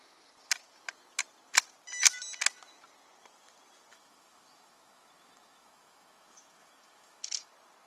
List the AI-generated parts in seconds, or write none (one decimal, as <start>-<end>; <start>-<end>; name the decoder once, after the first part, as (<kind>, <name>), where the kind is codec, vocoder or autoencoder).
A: 3.9-7.5 (autoencoder, DAC-VAE)